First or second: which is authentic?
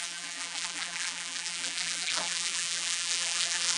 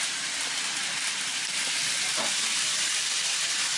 second